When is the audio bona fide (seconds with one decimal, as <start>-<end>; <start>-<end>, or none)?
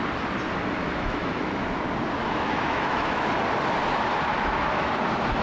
0.0-0.8; 1.8-2.2; 3.3-4.3; 4.9-5.4